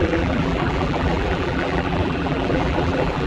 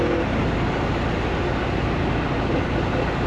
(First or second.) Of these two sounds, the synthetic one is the first